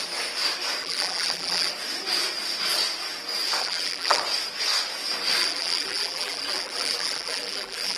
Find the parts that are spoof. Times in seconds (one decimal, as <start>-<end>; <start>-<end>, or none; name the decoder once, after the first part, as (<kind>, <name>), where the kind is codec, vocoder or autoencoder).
0.8-1.7 (vocoder, BigVGAN v2); 3.6-4.2; 5.4-8.0